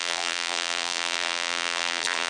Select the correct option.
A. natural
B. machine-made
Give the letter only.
B